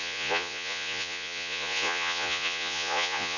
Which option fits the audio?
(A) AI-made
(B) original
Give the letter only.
A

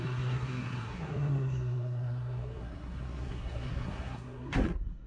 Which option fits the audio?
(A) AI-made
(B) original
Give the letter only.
A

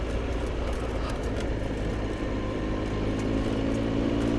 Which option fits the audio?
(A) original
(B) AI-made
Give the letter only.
A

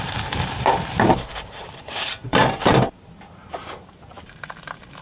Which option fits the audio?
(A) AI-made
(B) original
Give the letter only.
A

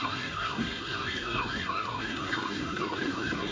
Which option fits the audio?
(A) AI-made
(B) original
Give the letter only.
A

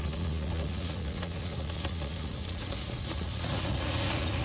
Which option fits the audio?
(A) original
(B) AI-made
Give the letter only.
B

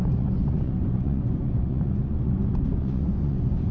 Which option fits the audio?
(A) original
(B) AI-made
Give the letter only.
B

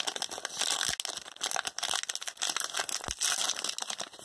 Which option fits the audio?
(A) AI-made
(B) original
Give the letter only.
B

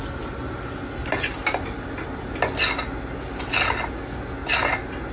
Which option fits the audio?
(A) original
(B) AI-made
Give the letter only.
A